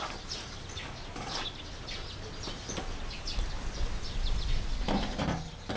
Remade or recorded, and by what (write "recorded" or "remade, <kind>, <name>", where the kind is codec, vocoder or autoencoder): recorded